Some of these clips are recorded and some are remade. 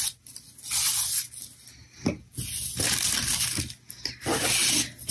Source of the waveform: recorded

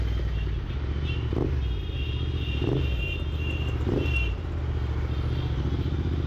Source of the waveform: recorded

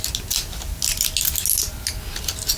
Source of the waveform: recorded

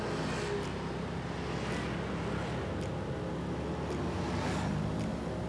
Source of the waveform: recorded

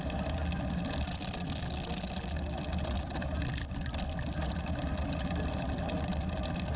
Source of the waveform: recorded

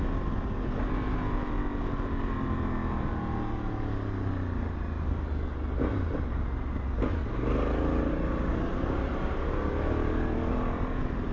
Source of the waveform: recorded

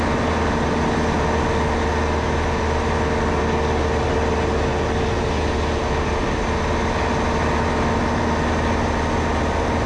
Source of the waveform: recorded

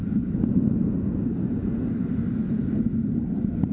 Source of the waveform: recorded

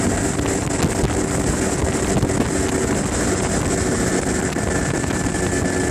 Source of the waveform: recorded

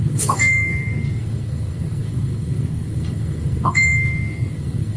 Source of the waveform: remade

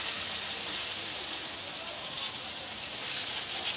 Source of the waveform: recorded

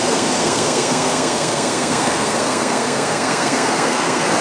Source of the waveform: remade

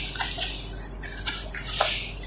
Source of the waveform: recorded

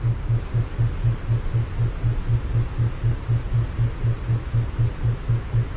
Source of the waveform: recorded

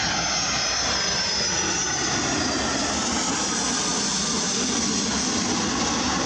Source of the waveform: recorded